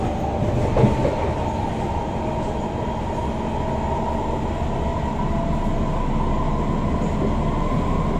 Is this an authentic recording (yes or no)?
yes